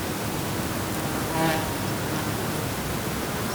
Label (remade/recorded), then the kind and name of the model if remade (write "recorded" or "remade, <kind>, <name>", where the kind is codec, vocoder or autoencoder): recorded